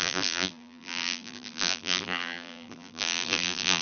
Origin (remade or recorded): remade